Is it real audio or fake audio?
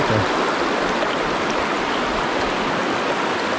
real